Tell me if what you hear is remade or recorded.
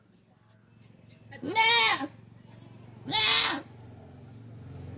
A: recorded